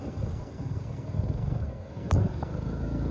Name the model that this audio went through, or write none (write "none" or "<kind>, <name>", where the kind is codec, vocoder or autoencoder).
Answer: codec, SNAC